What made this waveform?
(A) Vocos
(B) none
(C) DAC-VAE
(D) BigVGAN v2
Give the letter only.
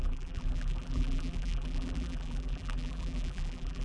D